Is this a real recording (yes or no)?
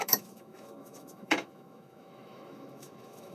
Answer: no